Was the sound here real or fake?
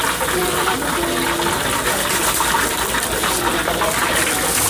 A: real